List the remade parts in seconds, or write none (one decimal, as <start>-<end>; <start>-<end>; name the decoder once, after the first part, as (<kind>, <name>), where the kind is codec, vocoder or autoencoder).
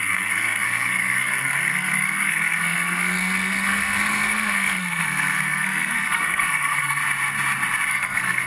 0.0-7.0 (codec, SNAC); 7.9-8.5